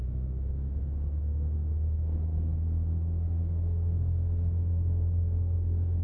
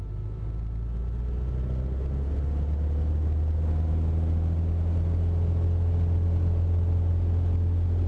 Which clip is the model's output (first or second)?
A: first